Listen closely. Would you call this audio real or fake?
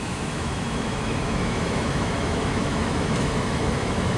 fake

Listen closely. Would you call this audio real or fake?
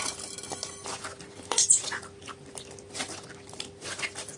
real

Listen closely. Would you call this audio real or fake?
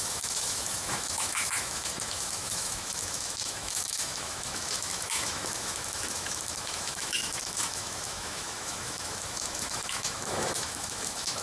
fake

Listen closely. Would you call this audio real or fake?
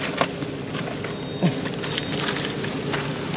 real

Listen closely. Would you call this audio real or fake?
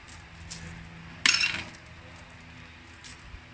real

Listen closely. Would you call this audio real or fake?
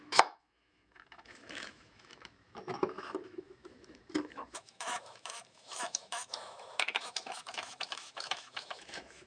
fake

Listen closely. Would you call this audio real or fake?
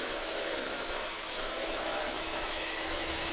fake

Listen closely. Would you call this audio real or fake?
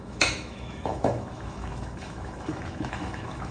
fake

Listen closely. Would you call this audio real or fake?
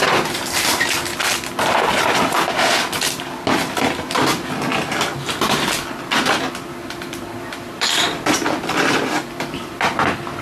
real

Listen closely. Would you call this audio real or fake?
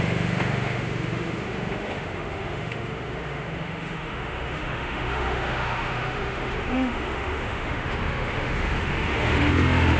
fake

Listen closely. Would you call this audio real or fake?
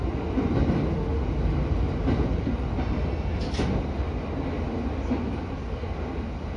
real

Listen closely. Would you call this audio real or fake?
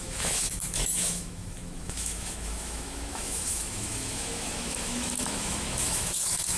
fake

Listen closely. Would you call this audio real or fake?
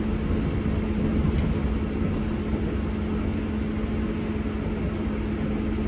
real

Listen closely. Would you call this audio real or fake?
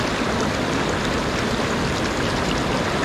real